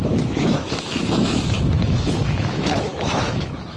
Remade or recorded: remade